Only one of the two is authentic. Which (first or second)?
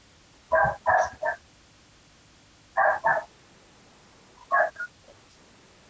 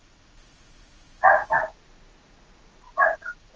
first